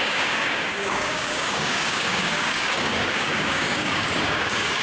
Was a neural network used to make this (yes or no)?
yes